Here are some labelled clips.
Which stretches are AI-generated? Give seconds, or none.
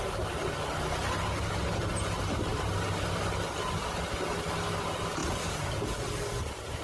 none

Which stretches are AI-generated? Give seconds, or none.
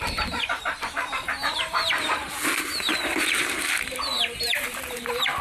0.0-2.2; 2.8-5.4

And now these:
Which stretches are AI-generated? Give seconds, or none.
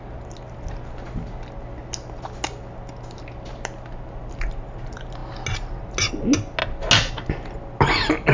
none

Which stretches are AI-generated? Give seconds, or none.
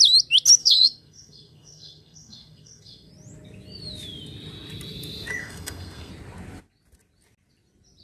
0.6-3.1; 5.4-6.1